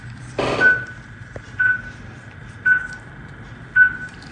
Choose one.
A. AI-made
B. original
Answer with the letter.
B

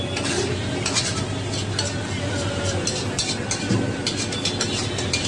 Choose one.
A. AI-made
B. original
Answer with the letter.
B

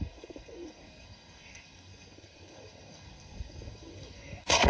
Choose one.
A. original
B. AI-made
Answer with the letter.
B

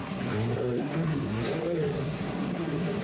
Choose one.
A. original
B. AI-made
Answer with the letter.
B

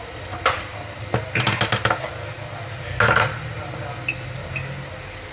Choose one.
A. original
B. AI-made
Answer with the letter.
A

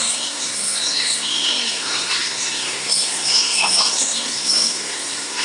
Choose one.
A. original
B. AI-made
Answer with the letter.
B